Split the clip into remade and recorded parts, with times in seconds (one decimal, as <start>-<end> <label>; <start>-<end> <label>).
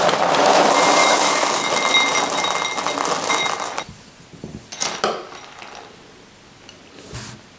0.0-1.0 recorded; 1.0-1.7 remade; 1.7-7.6 recorded